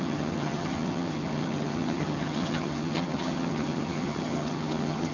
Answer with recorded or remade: remade